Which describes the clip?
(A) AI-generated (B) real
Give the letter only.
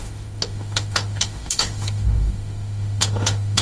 A